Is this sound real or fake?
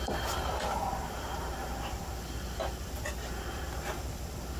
fake